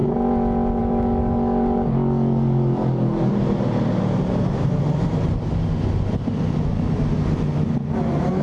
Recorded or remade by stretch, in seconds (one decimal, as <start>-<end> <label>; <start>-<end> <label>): 0.0-0.8 recorded; 0.8-3.3 remade; 3.3-8.4 recorded